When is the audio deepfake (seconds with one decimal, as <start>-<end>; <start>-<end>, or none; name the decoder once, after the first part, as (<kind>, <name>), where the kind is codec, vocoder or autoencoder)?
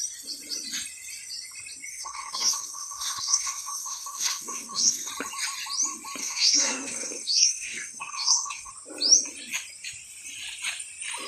1.9-5.1 (codec, SNAC); 6.2-8.7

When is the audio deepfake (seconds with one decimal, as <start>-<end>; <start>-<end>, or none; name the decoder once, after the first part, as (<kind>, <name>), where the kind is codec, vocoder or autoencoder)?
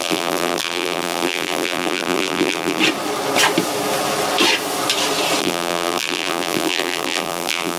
0.0-2.8 (vocoder, BigVGAN v2); 5.4-7.8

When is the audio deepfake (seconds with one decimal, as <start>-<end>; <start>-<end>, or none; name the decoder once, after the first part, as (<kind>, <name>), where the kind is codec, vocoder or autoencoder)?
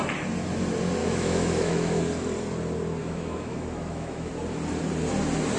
1.0-2.0 (autoencoder, DAC-VAE); 3.0-4.3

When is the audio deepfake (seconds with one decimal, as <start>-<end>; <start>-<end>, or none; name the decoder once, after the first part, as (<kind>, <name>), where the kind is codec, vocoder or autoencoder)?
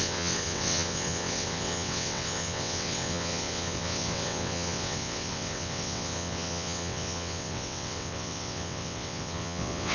0.0-9.9 (vocoder, WaveNeXt)